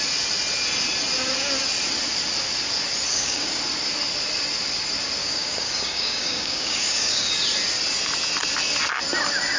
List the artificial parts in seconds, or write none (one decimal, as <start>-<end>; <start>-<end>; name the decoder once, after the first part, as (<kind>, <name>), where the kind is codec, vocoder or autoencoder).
3.1-3.6 (codec, DAC); 5.2-7.3